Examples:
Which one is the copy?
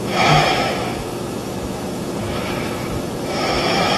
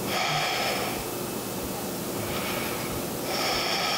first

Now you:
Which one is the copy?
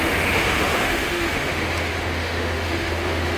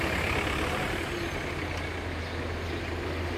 first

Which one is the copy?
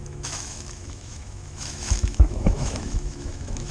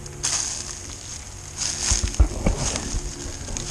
first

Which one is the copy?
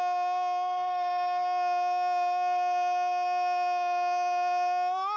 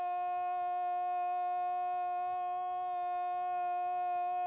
first